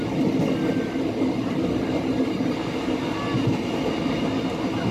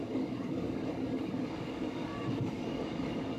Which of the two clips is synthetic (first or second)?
second